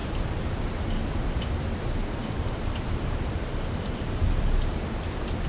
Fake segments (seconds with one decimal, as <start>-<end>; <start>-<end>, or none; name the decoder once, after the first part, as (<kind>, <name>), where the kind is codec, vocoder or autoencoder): 2.2-4.7 (vocoder, BigVGAN v2)